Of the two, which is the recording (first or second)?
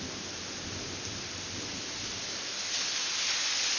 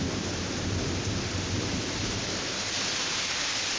first